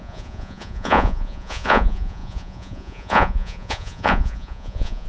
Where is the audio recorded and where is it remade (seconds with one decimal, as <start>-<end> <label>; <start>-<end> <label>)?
0.0-5.1 remade